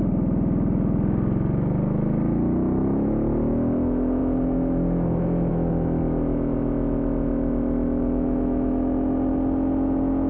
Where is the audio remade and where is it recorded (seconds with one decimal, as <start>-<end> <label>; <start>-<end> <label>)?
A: 0.0-10.3 recorded